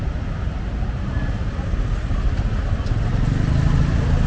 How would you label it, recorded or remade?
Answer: recorded